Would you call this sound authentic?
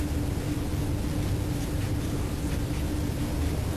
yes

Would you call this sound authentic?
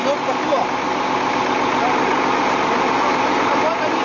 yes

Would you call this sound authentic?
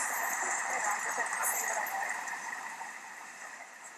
no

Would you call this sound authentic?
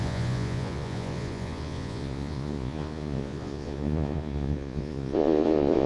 no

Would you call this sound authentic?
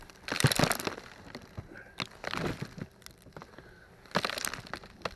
yes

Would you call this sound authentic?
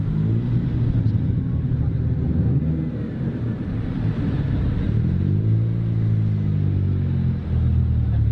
yes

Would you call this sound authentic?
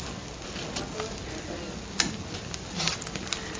yes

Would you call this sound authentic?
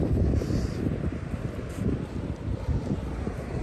yes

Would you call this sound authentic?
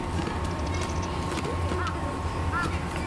yes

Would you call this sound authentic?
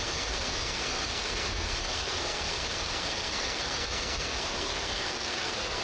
no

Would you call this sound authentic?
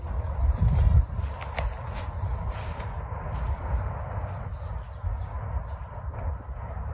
yes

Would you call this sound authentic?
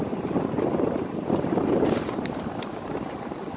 no